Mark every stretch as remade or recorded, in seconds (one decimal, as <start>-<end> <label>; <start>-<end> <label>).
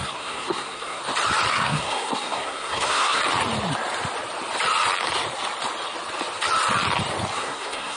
0.0-1.0 remade; 1.0-1.5 recorded; 1.5-3.2 remade; 3.2-7.3 recorded; 7.3-8.0 remade